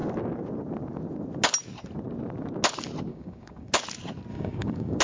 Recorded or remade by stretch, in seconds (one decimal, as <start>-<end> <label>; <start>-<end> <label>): 0.0-3.1 recorded; 3.1-3.7 remade; 3.7-4.3 recorded; 4.3-5.0 remade